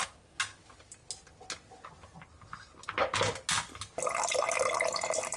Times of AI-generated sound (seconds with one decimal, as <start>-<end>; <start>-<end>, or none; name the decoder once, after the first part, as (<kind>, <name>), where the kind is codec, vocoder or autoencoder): none